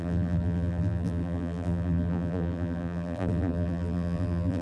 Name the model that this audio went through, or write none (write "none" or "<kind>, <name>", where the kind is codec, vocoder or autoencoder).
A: vocoder, BigVGAN v2